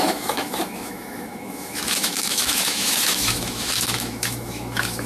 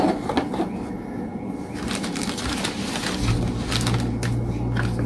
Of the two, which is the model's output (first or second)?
first